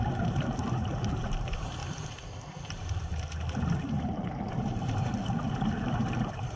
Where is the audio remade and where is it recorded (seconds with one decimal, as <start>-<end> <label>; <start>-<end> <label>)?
0.0-1.8 remade; 1.8-2.6 recorded; 2.6-3.1 remade; 3.1-3.9 recorded; 3.9-5.1 remade; 5.1-6.1 recorded; 6.1-6.6 remade